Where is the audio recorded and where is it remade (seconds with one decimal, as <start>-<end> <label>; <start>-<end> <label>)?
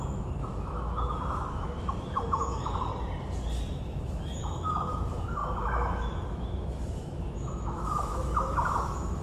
0.0-2.9 remade; 2.9-3.7 recorded; 3.7-9.2 remade